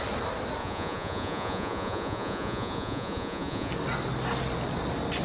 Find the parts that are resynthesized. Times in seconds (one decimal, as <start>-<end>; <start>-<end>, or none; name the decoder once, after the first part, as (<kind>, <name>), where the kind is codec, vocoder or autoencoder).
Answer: 0.6-3.7 (vocoder, Vocos)